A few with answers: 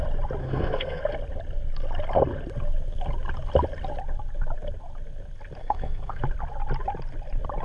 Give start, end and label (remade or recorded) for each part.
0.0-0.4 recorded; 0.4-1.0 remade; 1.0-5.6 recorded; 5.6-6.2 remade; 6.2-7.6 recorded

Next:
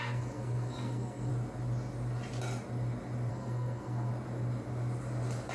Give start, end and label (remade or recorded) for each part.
0.0-1.3 remade; 1.3-3.3 recorded; 3.3-4.1 remade; 4.1-5.5 recorded

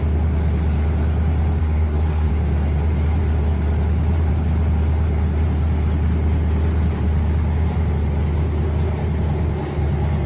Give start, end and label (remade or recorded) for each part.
0.0-1.6 recorded; 1.6-2.3 remade; 2.3-10.3 recorded

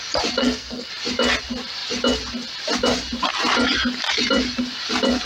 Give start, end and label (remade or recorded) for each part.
0.0-0.4 recorded; 0.4-0.9 remade; 0.9-5.3 recorded

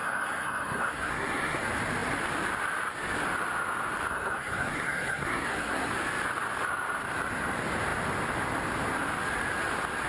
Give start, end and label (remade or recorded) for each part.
0.0-1.6 remade; 1.6-4.1 recorded; 4.1-5.9 remade; 5.9-10.1 recorded

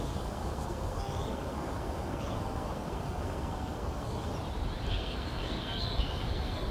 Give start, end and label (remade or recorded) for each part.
0.0-4.3 remade; 4.3-4.9 recorded; 4.9-6.7 remade

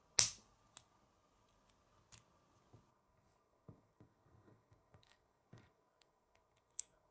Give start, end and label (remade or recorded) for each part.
0.0-2.9 recorded; 2.9-7.1 remade